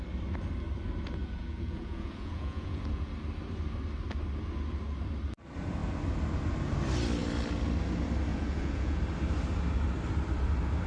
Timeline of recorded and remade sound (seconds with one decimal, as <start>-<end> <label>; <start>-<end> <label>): 0.0-1.2 recorded; 1.2-3.1 remade; 3.1-8.3 recorded; 8.3-9.0 remade; 9.0-10.9 recorded